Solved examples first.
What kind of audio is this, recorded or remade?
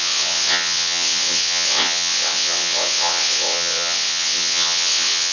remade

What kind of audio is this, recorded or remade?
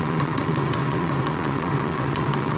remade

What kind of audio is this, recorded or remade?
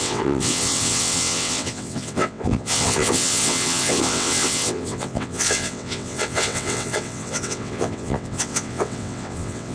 remade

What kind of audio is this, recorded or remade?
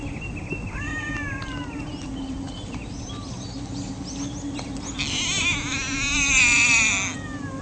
recorded